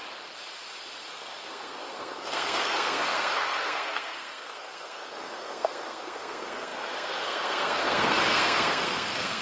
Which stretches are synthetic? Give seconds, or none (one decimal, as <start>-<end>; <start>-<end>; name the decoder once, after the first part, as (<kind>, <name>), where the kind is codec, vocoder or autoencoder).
1.1-9.4 (codec, SNAC)